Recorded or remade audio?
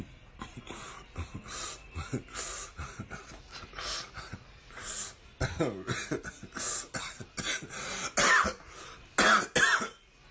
recorded